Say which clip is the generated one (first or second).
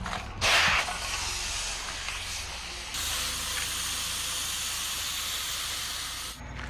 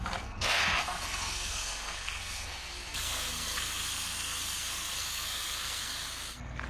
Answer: second